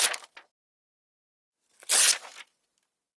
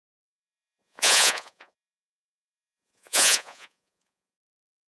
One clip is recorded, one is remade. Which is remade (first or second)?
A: second